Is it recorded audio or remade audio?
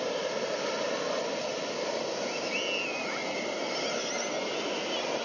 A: recorded